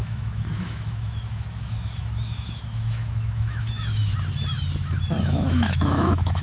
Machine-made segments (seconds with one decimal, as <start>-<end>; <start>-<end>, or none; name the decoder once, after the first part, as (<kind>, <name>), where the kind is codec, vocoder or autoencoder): 0.0-4.0 (autoencoder, DAC-VAE); 5.2-6.4